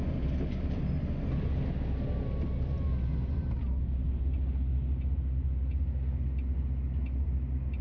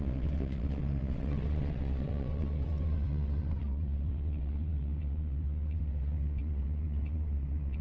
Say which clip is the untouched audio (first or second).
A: first